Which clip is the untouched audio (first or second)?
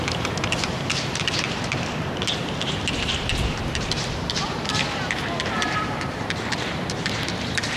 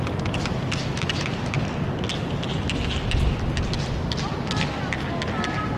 second